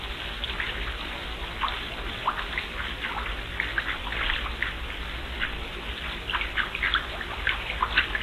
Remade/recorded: recorded